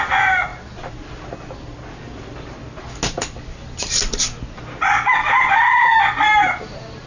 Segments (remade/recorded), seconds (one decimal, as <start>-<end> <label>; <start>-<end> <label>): 0.0-7.1 recorded